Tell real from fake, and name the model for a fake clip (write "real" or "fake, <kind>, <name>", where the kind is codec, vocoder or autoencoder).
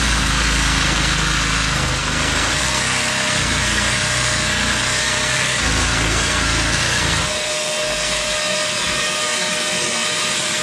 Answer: fake, codec, SNAC